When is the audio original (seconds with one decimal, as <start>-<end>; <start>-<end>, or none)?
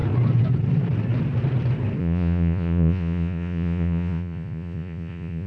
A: 0.0-2.0